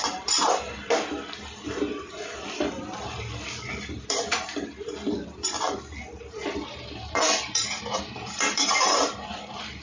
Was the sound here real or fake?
fake